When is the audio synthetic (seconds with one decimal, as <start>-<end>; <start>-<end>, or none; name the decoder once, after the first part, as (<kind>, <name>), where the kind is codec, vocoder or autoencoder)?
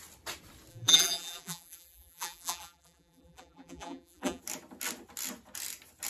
0.7-4.4 (vocoder, BigVGAN v2)